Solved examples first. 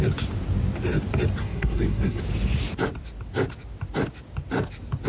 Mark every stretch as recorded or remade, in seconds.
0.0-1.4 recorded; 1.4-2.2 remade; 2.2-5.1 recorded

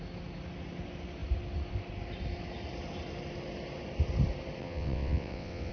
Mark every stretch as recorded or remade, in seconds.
0.0-4.6 recorded; 4.6-5.7 remade

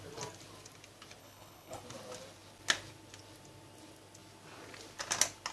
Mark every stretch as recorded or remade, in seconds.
0.0-1.2 recorded; 1.2-1.8 remade; 1.8-5.5 recorded

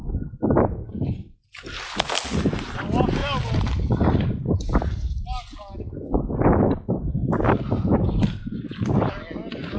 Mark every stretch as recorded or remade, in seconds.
0.0-9.8 recorded